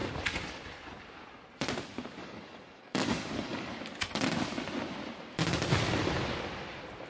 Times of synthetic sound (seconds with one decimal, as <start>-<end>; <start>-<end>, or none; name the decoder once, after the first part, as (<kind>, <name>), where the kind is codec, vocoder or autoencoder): 2.2-3.8 (codec, DAC)